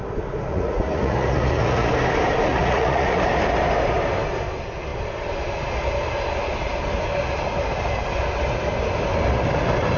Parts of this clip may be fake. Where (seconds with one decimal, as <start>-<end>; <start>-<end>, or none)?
0.5-1.9; 2.5-3.2